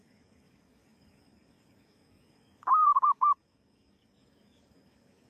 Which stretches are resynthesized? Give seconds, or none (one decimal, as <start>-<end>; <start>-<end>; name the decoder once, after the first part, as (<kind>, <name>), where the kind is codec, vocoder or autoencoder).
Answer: 0.0-5.3 (codec, DAC)